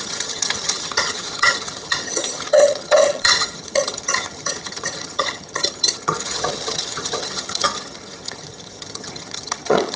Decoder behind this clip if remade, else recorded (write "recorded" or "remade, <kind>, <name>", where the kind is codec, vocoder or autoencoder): remade, vocoder, HiFi-GAN